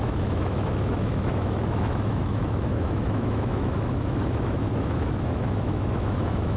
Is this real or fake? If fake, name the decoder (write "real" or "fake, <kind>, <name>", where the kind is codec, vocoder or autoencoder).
fake, autoencoder, DAC-VAE